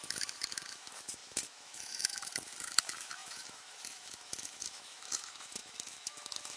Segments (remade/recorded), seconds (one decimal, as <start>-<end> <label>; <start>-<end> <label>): 0.0-6.6 remade